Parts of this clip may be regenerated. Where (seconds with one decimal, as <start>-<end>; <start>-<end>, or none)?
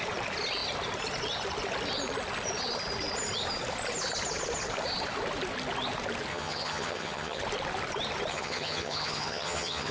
6.3-7.4; 8.3-9.9